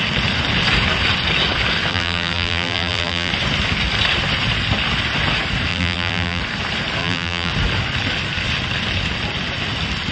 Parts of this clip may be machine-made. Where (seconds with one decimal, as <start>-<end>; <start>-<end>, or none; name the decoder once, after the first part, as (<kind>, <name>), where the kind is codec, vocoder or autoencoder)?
1.9-3.3 (vocoder, BigVGAN v2); 5.7-6.4; 7.0-7.5